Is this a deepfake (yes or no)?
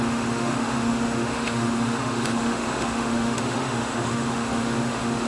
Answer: yes